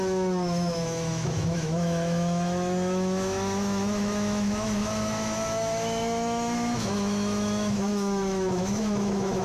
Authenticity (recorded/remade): remade